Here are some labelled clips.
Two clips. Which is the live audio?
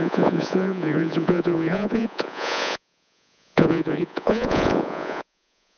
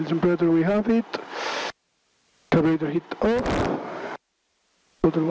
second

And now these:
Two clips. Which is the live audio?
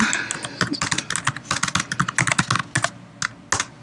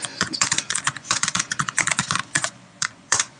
first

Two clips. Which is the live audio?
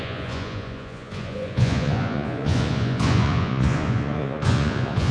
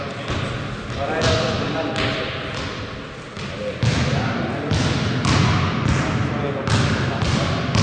second